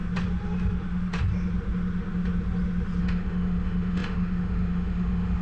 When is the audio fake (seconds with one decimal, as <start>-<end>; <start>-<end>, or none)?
3.0-5.4